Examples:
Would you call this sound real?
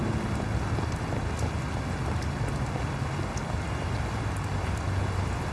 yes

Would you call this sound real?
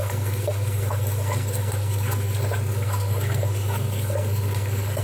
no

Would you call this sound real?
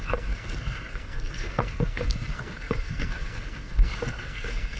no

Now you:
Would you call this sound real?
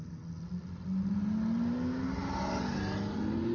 yes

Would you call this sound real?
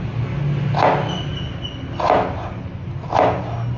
yes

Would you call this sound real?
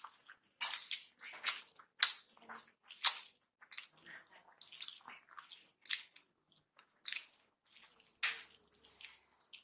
yes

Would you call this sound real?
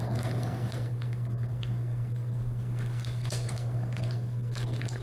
no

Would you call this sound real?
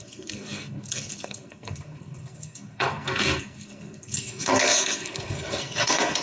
no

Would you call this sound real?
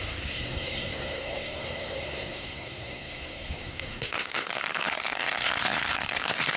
no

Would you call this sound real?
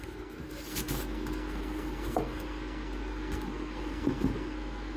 no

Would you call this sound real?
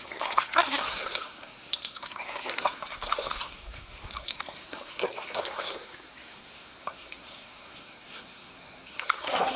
no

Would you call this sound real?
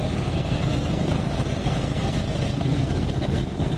no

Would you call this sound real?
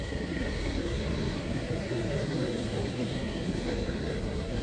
no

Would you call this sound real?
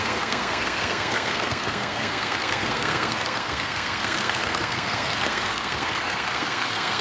no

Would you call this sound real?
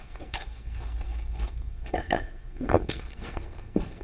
no